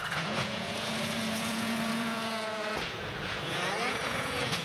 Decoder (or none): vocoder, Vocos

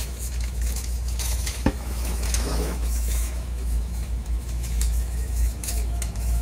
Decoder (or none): autoencoder, DAC-VAE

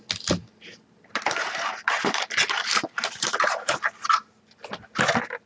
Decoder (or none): none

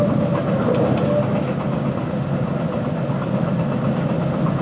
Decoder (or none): none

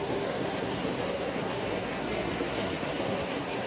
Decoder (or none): codec, SNAC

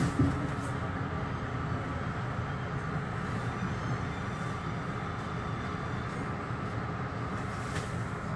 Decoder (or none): none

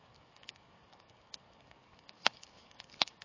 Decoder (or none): codec, DAC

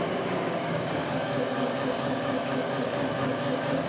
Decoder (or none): codec, DAC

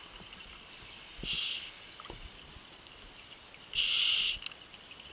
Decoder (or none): none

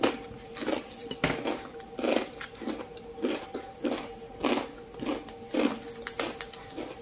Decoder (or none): none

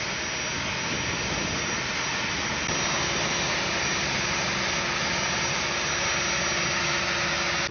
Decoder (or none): none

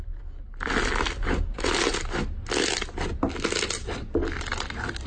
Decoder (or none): none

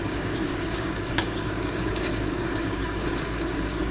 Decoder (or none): codec, DAC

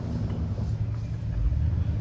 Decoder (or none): none